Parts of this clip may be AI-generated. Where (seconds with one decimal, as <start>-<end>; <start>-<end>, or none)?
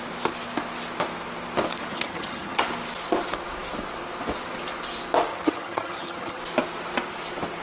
1.9-2.6; 5.3-6.4